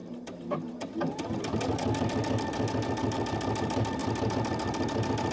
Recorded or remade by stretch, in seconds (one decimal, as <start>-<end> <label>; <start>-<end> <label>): 0.0-5.3 recorded